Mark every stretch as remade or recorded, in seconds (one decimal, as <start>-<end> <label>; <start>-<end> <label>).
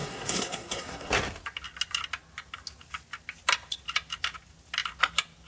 0.0-1.1 remade; 1.1-5.5 recorded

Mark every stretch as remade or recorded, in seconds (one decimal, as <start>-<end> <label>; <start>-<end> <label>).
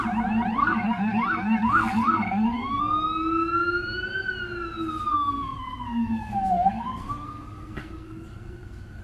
0.0-0.6 recorded; 0.6-2.8 remade; 2.8-5.1 recorded; 5.1-9.0 remade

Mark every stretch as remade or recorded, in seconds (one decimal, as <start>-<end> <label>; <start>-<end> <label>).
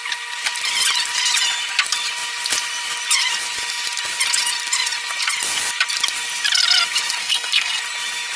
0.0-7.2 recorded; 7.2-7.8 remade; 7.8-8.4 recorded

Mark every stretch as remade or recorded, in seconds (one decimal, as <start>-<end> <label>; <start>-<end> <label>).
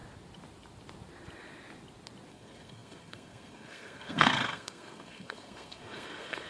0.0-2.3 recorded; 2.3-6.5 remade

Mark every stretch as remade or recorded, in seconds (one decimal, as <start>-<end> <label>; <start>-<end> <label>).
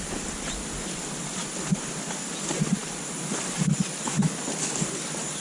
0.0-5.4 recorded